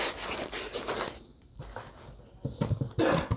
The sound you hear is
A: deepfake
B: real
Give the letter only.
B